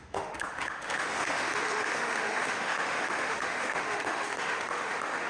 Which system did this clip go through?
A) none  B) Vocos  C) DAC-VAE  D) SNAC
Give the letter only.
C